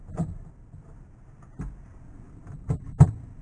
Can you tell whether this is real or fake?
real